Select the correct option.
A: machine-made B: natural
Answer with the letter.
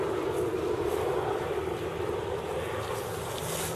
B